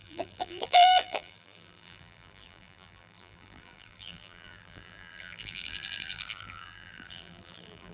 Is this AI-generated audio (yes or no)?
yes